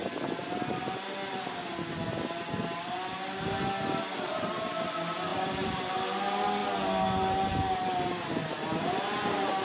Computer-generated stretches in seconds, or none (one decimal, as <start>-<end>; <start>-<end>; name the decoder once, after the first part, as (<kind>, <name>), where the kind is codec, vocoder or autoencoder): 5.3-5.8 (vocoder, BigVGAN v2)